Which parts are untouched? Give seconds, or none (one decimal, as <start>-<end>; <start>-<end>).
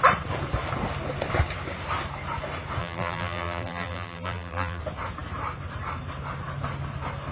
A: 0.0-2.8; 4.8-7.3